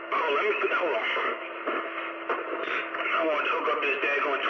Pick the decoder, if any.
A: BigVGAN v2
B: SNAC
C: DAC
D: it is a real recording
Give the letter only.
D